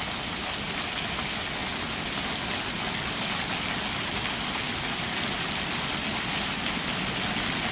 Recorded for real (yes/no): yes